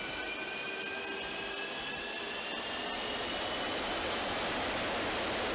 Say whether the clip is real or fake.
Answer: real